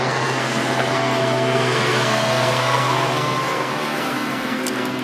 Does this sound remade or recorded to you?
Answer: remade